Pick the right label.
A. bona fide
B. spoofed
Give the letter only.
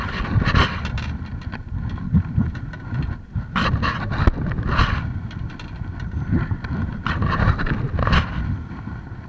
A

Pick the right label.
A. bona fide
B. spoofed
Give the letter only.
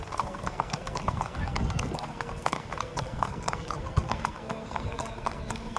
B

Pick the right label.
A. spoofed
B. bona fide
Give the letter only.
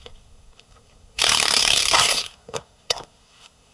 A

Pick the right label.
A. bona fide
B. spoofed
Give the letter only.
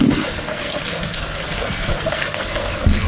B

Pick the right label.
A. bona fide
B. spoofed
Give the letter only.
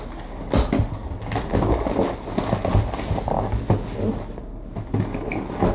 A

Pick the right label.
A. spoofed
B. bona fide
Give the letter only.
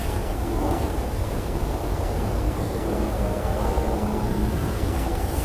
A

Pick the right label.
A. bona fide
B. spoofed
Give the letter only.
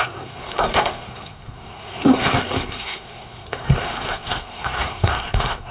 B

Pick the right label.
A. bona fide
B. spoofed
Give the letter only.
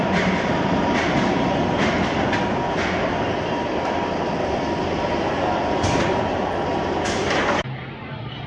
A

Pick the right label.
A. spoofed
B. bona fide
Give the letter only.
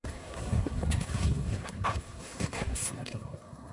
A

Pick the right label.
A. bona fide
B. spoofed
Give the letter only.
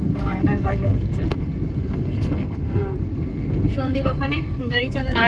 B